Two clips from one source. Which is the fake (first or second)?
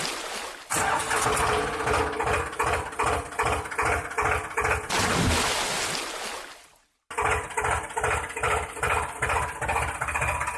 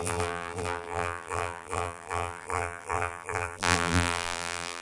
second